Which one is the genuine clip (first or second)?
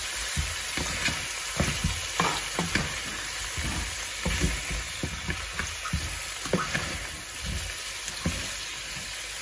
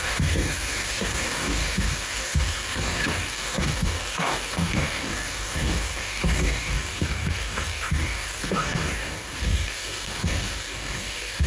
first